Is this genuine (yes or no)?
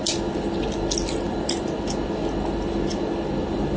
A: yes